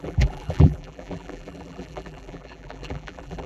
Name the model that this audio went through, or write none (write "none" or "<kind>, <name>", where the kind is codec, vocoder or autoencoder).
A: vocoder, BigVGAN v2